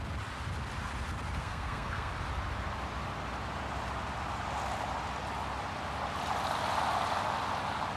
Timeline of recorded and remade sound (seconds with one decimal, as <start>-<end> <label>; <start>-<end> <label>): 0.0-1.4 recorded; 1.4-2.1 remade; 2.1-8.0 recorded